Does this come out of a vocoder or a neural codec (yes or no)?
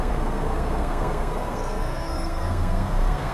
yes